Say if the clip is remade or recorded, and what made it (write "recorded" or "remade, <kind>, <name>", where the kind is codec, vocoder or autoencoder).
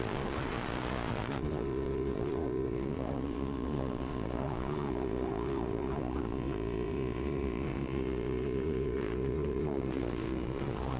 remade, vocoder, Vocos